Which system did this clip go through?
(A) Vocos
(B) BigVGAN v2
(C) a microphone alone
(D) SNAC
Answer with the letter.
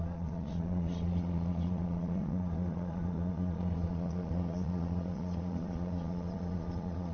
A